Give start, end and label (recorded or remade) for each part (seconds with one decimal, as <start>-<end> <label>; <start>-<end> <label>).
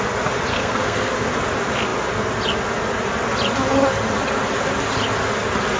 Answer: 0.0-0.5 recorded; 0.5-1.1 remade; 1.1-5.8 recorded